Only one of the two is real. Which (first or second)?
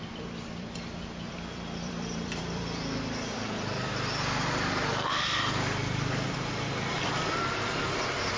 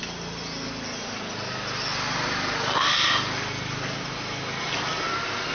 second